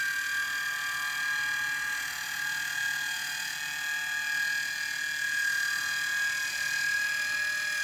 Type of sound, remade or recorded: recorded